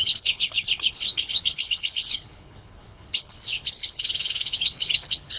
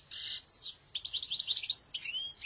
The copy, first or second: first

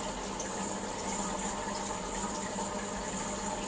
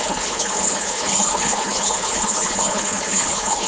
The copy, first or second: second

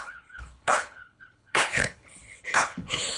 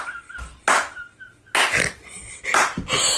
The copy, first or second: first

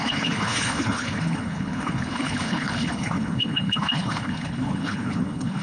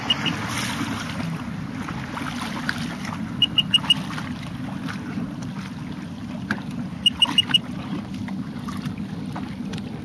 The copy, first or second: first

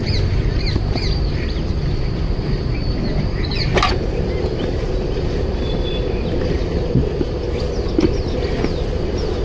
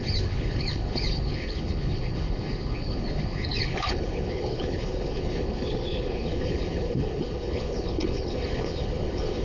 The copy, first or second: second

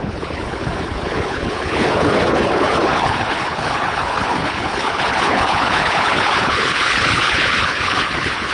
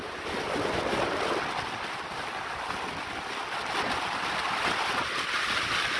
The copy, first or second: first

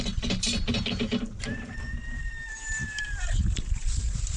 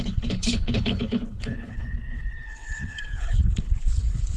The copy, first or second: second